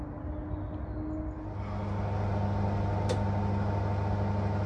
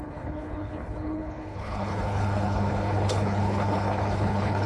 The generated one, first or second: second